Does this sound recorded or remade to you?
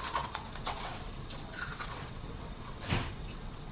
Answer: remade